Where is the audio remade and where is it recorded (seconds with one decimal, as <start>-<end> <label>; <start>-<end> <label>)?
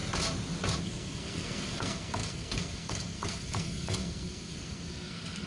0.0-0.8 recorded; 0.8-5.5 remade